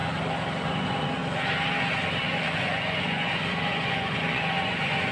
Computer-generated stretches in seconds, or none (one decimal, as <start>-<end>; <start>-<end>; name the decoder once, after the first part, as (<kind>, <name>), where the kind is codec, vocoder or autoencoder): 0.7-1.2 (vocoder, Vocos); 2.2-5.1